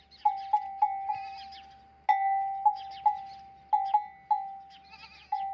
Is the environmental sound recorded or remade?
recorded